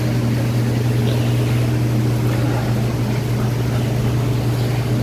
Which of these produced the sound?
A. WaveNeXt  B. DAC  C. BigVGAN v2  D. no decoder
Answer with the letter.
D